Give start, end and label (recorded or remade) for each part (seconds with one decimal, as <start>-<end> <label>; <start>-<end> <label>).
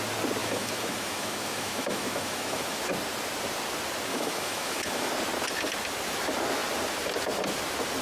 0.0-0.4 recorded; 0.4-2.8 remade; 2.8-4.1 recorded; 4.1-5.1 remade; 5.1-8.0 recorded